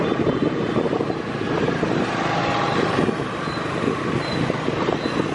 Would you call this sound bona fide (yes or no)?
yes